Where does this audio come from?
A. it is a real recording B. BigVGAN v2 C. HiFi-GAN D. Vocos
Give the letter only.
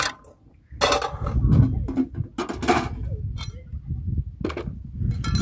A